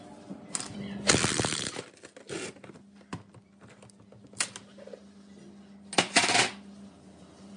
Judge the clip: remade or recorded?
recorded